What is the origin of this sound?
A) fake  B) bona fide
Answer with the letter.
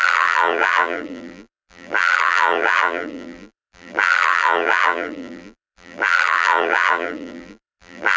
A